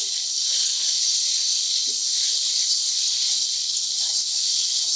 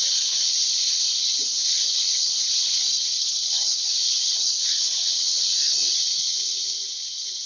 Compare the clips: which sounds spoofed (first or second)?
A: second